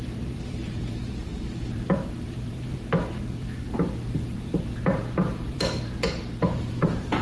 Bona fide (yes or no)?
no